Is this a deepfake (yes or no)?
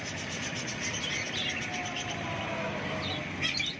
no